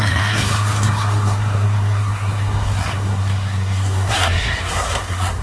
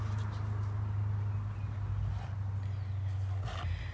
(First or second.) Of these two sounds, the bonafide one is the second